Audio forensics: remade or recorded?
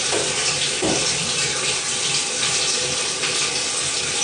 recorded